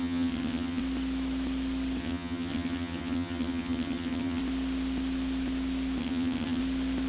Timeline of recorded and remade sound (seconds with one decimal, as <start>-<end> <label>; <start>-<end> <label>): 0.0-0.8 remade; 0.8-2.0 recorded; 2.0-4.4 remade; 4.4-6.0 recorded; 6.0-6.6 remade; 6.6-7.1 recorded